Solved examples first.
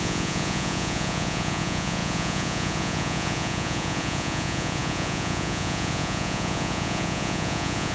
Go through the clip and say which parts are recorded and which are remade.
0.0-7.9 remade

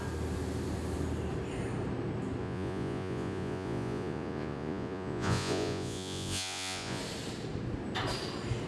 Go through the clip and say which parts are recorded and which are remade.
0.0-2.4 recorded; 2.4-7.0 remade; 7.0-8.7 recorded

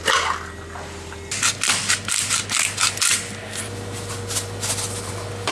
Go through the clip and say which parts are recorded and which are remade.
0.0-5.5 recorded

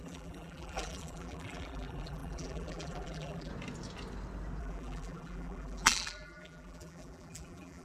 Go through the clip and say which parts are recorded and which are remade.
0.0-3.5 remade; 3.5-4.6 recorded; 4.6-7.8 remade

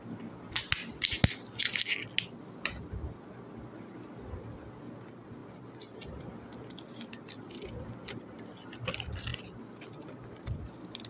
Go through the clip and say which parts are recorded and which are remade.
0.0-11.1 recorded

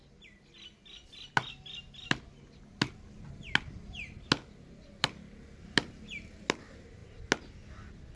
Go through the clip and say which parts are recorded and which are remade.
0.0-8.2 recorded